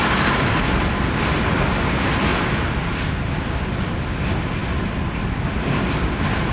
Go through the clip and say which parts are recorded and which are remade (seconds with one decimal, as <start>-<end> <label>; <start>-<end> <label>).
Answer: 0.0-6.5 recorded

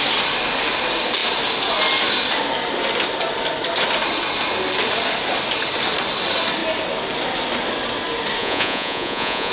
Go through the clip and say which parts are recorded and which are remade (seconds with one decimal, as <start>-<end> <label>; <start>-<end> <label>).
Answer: 0.0-8.4 recorded; 8.4-9.5 remade

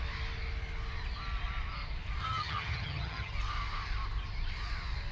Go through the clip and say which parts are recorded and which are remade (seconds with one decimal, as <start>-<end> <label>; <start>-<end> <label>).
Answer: 0.0-2.2 recorded; 2.2-3.3 remade; 3.3-5.1 recorded

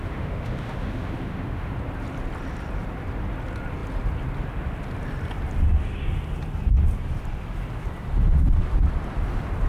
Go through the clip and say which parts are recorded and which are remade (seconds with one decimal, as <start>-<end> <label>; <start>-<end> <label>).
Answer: 0.0-1.7 remade; 1.7-9.7 recorded

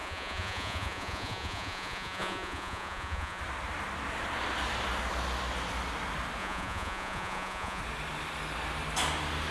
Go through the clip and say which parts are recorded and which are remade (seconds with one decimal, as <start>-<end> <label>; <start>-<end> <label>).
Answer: 0.0-3.4 remade; 3.4-6.4 recorded; 6.4-7.8 remade; 7.8-9.5 recorded

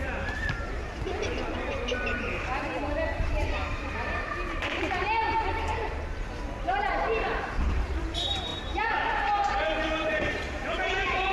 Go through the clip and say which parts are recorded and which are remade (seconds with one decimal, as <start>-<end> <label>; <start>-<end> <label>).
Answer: 0.0-0.8 remade; 0.8-2.2 recorded; 2.2-11.3 remade